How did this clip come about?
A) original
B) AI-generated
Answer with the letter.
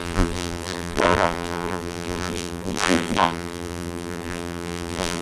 B